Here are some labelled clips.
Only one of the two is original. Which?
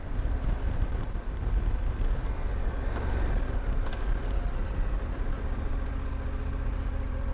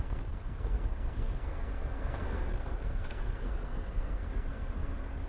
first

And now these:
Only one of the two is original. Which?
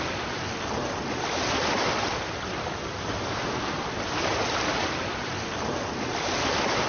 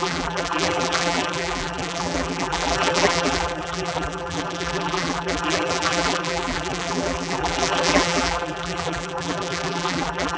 first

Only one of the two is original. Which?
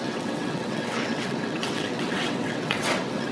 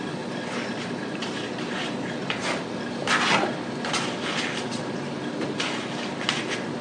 second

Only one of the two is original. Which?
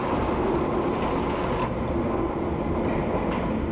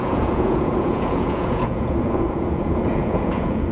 first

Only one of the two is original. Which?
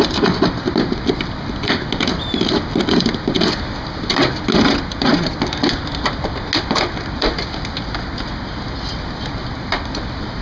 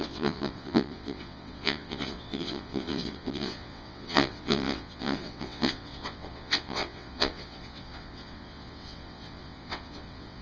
first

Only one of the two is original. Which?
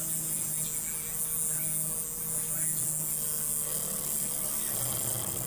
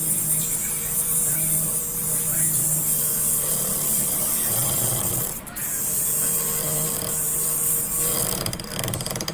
first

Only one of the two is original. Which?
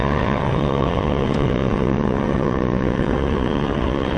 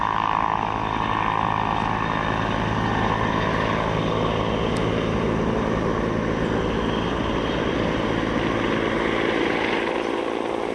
second